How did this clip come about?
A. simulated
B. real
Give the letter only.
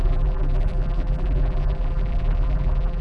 A